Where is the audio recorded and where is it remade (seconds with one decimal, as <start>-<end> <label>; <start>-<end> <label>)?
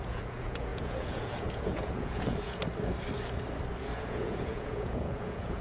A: 0.0-2.6 remade; 2.6-3.8 recorded; 3.8-5.6 remade